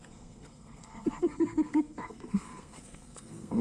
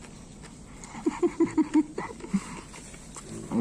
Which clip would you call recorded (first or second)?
second